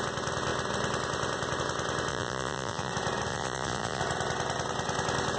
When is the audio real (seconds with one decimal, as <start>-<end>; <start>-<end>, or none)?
0.0-2.1; 2.9-3.3; 4.0-5.4